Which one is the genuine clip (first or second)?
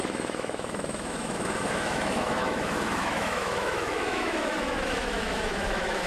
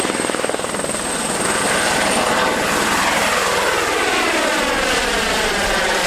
second